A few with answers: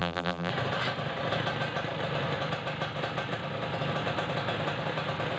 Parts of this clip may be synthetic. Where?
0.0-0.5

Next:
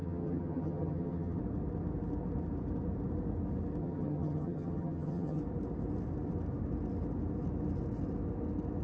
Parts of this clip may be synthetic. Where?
0.0-1.4; 3.8-5.4

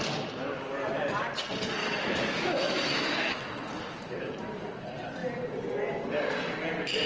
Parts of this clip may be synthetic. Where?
1.8-3.4